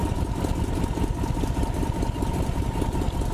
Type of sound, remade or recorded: recorded